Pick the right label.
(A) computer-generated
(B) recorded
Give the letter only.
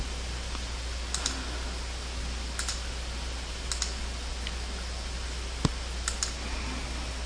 B